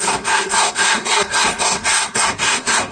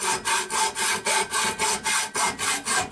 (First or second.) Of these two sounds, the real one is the second